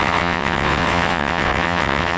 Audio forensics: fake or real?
fake